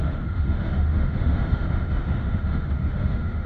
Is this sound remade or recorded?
remade